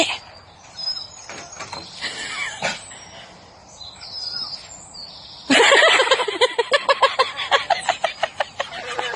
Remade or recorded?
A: recorded